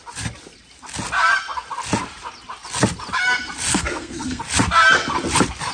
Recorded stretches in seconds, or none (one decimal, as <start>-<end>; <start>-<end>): 0.0-3.7; 4.4-5.7